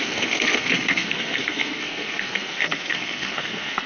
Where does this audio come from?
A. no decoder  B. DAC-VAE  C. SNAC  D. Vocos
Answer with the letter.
C